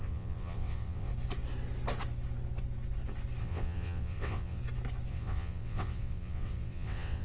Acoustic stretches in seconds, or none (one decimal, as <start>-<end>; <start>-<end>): 1.1-3.4; 4.6-5.1